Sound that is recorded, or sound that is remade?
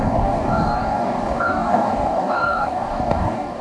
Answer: remade